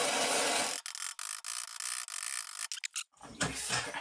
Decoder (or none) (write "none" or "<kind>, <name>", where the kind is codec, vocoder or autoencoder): none